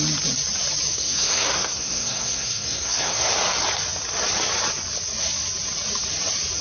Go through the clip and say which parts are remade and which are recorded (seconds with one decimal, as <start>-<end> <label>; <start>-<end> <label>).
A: 0.0-0.9 recorded; 0.9-3.3 remade; 3.3-6.6 recorded